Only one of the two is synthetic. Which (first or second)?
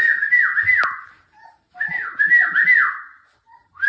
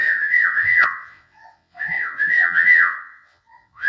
second